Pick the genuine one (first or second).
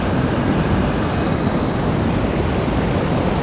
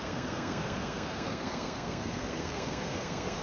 first